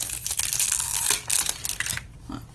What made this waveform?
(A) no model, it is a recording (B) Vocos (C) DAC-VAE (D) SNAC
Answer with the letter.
A